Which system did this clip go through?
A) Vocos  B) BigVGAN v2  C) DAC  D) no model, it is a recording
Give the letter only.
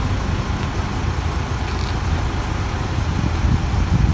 D